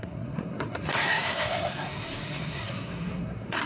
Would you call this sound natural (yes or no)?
no